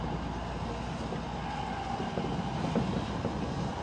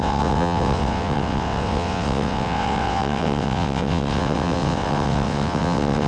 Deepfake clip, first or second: second